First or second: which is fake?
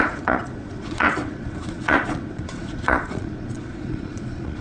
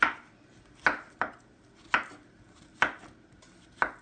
first